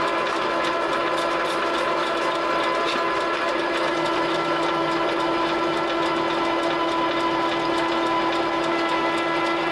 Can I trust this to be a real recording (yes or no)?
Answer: yes